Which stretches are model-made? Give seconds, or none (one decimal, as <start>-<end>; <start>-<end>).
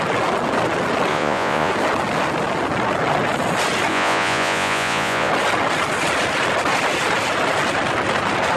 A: 1.1-1.7; 3.9-5.3